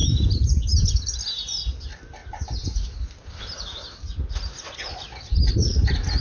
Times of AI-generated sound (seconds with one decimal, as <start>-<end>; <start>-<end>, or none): 0.0-0.9; 2.2-5.5

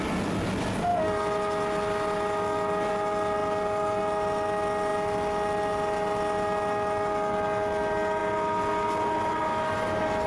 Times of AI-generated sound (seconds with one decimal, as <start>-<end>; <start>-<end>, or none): none

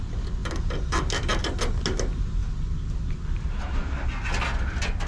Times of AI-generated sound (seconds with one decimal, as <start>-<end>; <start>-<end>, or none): none